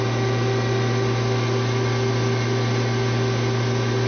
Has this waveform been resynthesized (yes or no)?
no